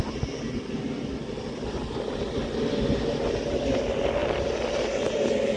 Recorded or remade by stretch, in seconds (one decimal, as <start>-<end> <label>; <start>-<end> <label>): 0.0-5.6 recorded